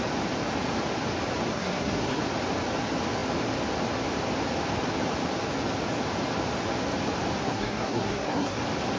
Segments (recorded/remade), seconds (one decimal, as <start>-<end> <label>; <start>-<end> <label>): 0.0-1.5 recorded; 1.5-2.2 remade; 2.2-7.4 recorded; 7.4-8.6 remade; 8.6-9.0 recorded